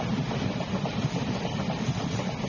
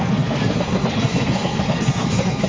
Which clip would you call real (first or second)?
first